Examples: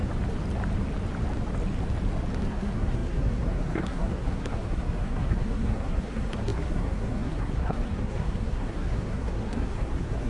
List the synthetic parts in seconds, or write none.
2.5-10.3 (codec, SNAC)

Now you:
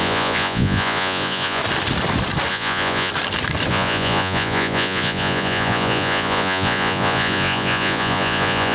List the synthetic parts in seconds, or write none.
0.0-1.6 (vocoder, Vocos); 2.5-3.1; 3.7-8.7

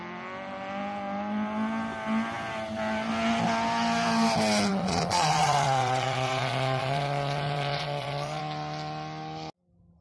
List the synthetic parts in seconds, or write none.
4.7-8.4 (vocoder, Vocos)

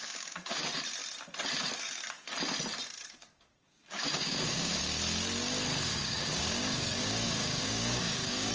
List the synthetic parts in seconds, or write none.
0.0-0.6 (codec, DAC); 3.2-4.8; 5.9-8.5

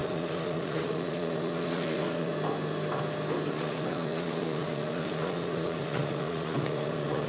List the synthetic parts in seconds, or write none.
0.0-2.3 (vocoder, Vocos); 3.5-7.3

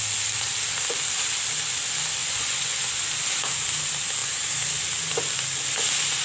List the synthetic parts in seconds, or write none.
2.2-2.8 (vocoder, Vocos)

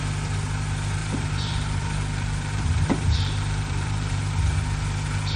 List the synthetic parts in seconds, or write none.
1.0-4.2 (vocoder, BigVGAN v2)